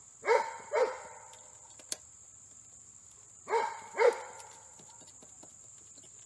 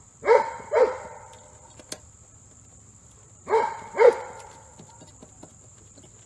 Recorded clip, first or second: first